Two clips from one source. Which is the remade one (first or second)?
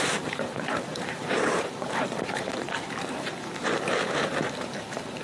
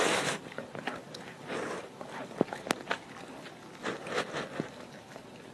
first